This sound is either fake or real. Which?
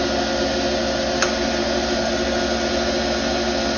real